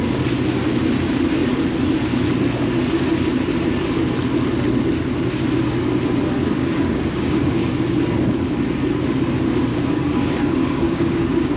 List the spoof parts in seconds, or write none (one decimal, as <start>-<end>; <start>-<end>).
6.6-7.7; 9.7-11.6